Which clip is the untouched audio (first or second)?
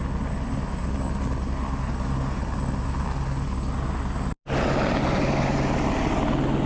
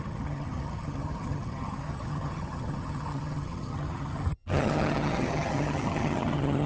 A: first